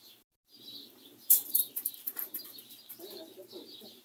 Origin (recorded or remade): remade